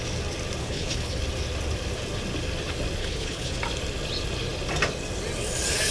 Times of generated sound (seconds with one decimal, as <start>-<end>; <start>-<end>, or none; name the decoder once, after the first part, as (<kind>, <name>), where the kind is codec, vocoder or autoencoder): 0.6-1.2 (codec, HILCodec); 3.0-3.6